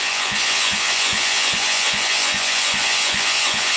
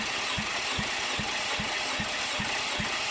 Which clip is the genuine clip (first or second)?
second